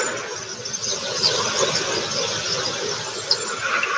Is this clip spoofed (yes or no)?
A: no